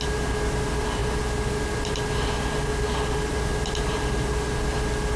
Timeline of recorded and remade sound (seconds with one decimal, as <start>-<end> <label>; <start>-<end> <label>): 0.0-5.2 recorded